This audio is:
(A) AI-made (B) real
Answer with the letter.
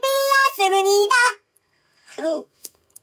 A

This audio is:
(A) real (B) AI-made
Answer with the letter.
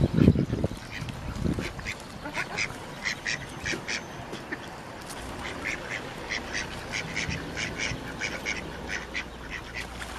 A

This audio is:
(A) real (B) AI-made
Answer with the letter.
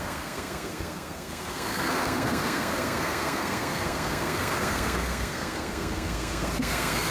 B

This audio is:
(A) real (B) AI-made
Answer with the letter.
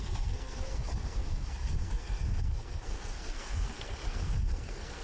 B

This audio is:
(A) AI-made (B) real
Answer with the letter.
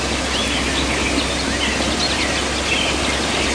B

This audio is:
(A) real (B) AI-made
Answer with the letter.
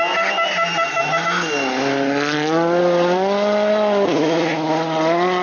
A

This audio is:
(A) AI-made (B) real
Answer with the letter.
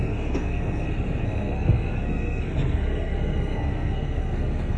A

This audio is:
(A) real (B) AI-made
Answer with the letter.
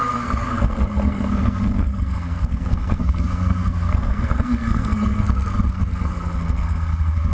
B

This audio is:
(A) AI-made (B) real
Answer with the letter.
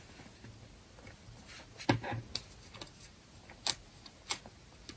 B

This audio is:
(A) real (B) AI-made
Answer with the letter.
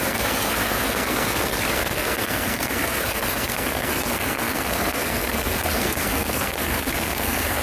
B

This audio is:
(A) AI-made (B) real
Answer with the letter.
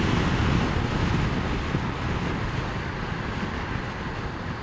B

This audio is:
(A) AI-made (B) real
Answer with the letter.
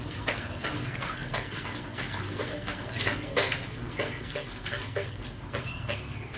A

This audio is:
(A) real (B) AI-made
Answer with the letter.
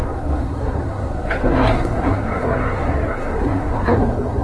B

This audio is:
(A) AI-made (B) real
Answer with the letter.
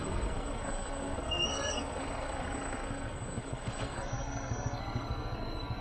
A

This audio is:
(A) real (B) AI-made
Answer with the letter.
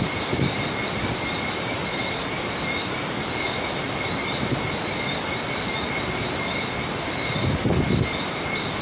A